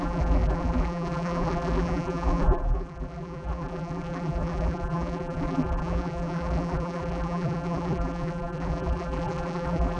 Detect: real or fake fake